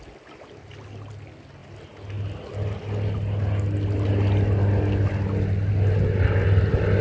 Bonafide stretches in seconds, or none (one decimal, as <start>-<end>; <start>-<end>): 0.0-7.0